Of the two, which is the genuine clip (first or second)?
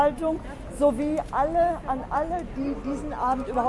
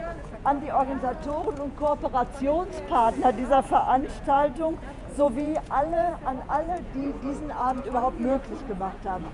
first